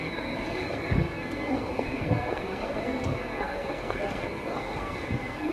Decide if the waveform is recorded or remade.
remade